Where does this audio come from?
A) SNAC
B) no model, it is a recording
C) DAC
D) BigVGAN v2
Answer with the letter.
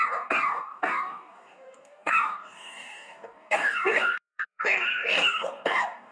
C